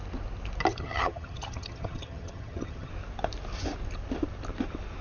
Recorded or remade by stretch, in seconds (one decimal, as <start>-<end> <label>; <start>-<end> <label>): 0.0-0.7 recorded; 0.7-2.9 remade; 2.9-5.0 recorded